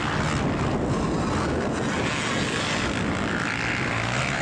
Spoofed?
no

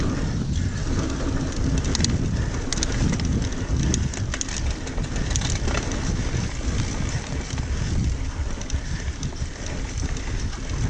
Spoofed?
no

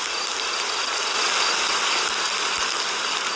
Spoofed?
no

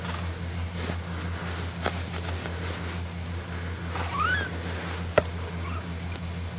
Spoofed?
no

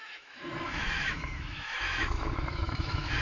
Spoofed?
yes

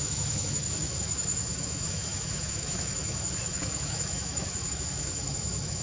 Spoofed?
yes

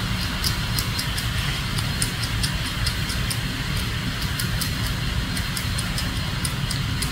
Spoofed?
no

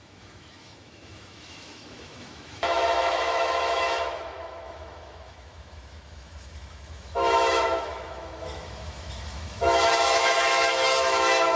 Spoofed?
yes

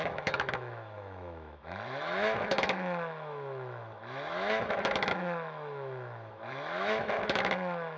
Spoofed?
yes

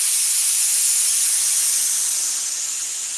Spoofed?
no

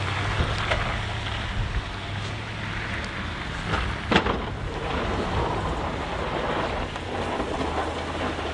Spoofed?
no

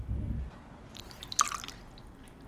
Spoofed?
no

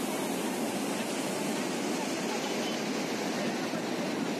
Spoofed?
no